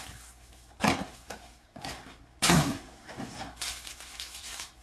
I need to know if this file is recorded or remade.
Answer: remade